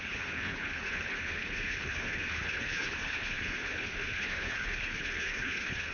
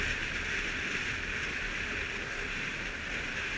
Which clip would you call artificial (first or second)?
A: first